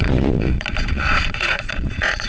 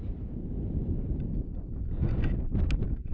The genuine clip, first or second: second